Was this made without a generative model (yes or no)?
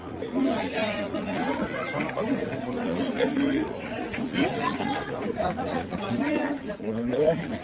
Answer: no